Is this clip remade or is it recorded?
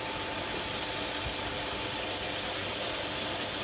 recorded